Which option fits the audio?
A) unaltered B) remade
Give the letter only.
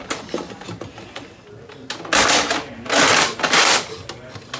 A